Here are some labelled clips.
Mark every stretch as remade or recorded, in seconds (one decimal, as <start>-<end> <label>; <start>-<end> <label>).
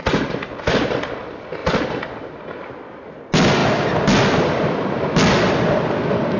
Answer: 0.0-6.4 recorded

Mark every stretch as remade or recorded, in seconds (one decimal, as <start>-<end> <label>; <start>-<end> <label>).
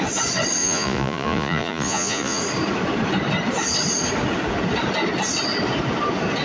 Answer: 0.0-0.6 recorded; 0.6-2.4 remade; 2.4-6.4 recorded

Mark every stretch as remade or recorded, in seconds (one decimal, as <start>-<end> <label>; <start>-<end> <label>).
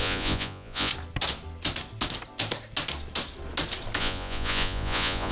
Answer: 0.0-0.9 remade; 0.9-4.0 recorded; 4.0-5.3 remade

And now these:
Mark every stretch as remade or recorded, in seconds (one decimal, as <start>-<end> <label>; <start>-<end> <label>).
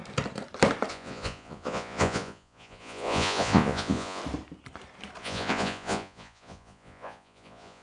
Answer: 0.0-0.9 recorded; 0.9-4.2 remade; 4.2-5.2 recorded; 5.2-7.8 remade